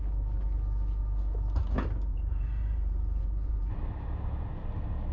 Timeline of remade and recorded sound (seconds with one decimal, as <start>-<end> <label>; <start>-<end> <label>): 0.0-2.1 recorded; 2.1-3.7 remade; 3.7-5.1 recorded